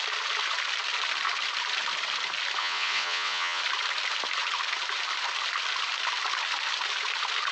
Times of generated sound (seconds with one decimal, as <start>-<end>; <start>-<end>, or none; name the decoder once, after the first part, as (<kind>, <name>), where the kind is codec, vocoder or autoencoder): 2.6-3.6 (vocoder, WaveNeXt)